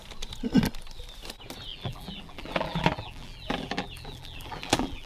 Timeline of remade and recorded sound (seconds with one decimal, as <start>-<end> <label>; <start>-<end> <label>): 0.0-1.7 recorded; 1.7-5.1 remade

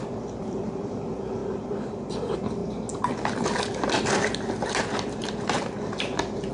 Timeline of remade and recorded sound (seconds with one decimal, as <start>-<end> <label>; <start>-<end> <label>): 0.0-2.6 remade; 2.6-6.5 recorded

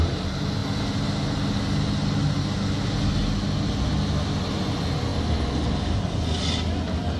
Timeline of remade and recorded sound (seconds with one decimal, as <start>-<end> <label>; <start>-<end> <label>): 0.0-7.2 recorded

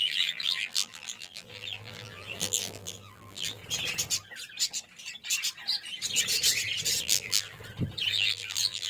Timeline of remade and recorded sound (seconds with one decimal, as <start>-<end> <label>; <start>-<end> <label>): 0.0-3.6 remade; 3.6-7.0 recorded; 7.0-7.6 remade; 7.6-8.1 recorded; 8.1-8.9 remade

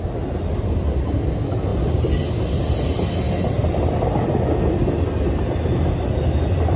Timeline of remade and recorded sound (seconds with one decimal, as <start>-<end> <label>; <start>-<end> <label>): 0.0-3.6 recorded; 3.6-4.4 remade; 4.4-6.8 recorded

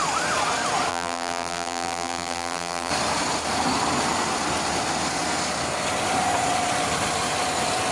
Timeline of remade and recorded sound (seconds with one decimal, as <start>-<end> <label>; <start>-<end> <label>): 0.0-0.9 recorded; 0.9-2.9 remade; 2.9-7.9 recorded

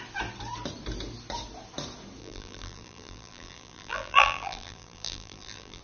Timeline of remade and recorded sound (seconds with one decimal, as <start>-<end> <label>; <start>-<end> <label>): 0.0-2.2 recorded; 2.2-5.8 remade